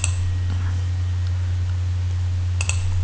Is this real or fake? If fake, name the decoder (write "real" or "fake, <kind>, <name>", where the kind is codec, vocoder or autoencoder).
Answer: real